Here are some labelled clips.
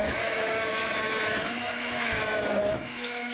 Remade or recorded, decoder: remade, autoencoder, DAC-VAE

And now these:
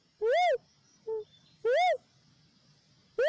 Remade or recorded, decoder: recorded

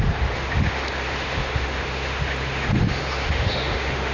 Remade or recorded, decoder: remade, autoencoder, DAC-VAE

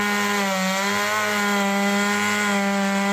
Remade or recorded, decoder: recorded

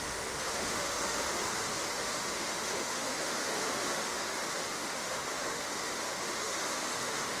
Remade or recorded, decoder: remade, autoencoder, DAC-VAE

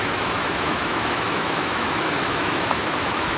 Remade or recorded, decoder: remade, autoencoder, DAC-VAE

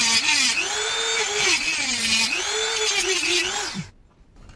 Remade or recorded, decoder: recorded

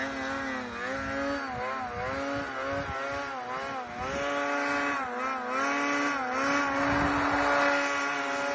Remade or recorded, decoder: recorded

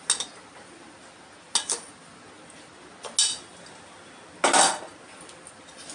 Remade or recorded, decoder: recorded